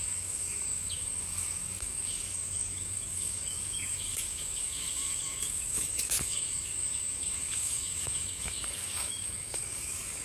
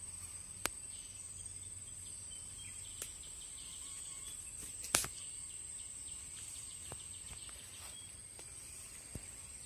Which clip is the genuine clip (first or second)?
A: second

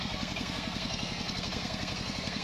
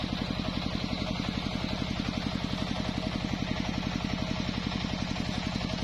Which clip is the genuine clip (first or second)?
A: second